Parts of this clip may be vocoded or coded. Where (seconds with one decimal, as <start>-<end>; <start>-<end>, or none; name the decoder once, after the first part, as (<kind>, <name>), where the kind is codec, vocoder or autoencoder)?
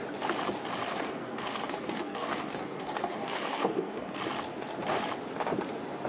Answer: 0.9-4.2 (codec, SNAC)